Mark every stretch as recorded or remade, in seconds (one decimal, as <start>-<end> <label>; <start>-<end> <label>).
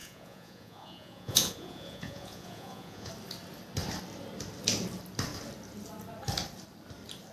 0.0-3.1 remade; 3.1-7.3 recorded